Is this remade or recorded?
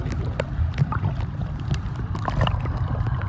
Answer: recorded